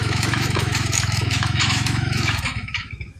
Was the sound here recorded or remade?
remade